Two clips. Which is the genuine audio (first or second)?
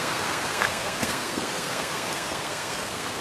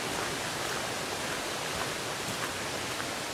second